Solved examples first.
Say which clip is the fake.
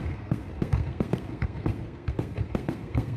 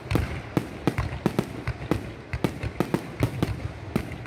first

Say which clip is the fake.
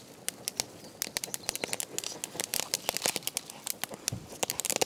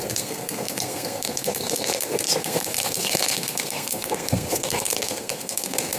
second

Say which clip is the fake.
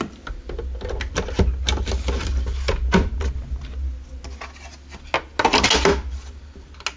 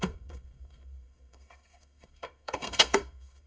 second